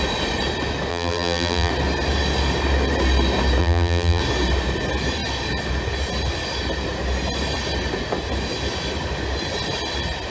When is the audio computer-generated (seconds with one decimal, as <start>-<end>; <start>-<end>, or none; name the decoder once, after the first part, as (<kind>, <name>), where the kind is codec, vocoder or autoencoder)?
0.9-1.7 (vocoder, BigVGAN v2); 3.6-4.2